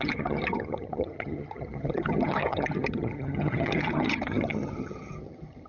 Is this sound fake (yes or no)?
yes